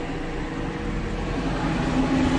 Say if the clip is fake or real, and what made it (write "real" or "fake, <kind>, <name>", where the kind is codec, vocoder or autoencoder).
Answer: real